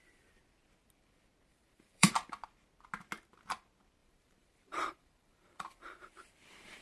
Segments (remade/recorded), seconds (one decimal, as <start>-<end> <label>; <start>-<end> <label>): 0.0-1.5 recorded; 1.5-2.1 remade; 2.1-4.0 recorded; 4.0-6.8 remade